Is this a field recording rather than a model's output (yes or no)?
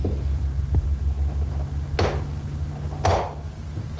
yes